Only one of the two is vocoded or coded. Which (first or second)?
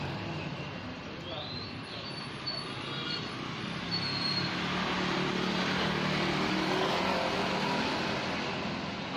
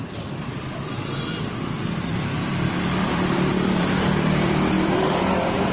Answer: second